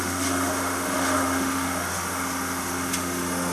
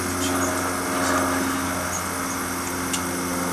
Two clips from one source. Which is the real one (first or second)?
second